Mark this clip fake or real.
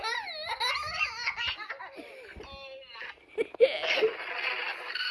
real